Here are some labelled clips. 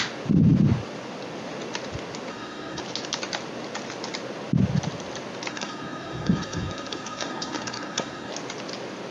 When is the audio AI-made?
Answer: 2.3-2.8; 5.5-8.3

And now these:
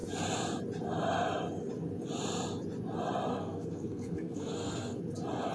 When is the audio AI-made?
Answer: 3.3-5.0

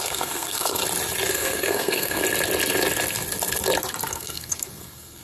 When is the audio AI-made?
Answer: 0.0-0.8; 1.3-2.2; 4.1-5.2

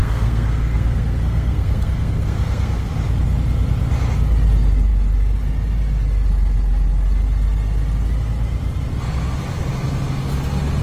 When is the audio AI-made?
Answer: 0.0-2.9